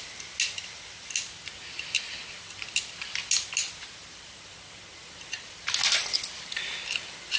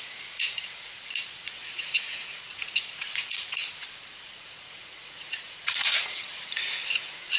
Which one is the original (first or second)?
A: first